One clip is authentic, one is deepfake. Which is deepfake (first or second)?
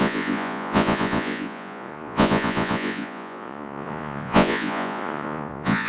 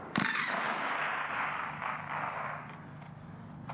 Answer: first